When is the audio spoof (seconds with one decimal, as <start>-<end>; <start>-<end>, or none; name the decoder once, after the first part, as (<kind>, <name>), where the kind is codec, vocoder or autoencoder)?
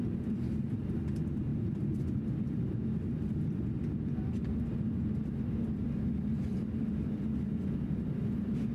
none